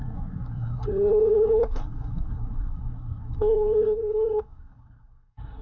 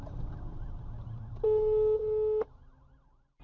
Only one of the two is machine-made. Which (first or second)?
first